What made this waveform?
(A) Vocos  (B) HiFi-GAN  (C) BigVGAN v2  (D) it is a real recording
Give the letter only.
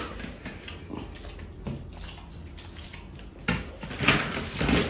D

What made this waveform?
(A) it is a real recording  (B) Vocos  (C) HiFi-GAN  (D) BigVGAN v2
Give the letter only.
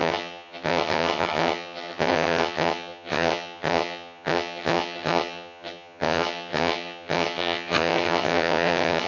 C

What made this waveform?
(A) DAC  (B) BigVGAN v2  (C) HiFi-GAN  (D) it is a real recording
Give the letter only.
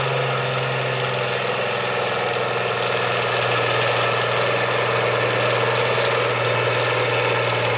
D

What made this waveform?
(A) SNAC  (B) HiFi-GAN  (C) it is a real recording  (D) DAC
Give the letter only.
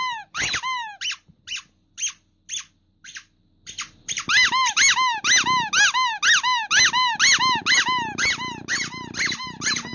C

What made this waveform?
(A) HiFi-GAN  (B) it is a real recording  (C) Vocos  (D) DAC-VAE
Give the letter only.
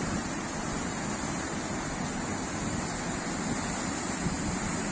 B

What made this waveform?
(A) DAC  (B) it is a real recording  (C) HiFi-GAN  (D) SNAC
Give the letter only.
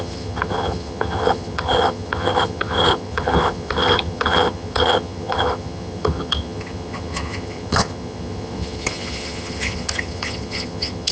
C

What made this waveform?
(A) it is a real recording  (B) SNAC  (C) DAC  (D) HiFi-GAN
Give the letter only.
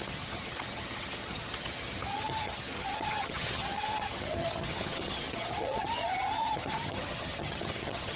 D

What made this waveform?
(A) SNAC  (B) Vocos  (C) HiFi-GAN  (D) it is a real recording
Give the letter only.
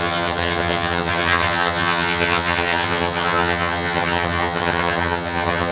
C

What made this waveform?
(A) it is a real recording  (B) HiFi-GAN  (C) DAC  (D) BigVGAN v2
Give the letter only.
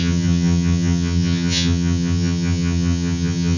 B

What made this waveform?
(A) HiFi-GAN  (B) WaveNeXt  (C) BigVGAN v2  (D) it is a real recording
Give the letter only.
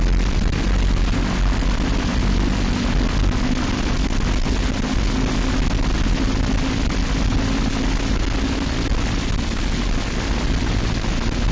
D